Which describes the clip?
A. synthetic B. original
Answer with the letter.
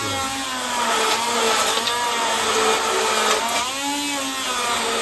B